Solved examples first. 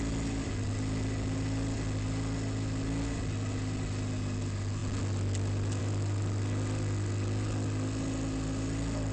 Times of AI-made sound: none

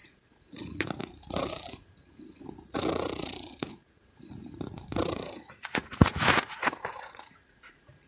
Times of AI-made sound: 0.0-8.1

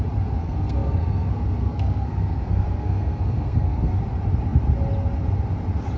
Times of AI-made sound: 0.4-4.0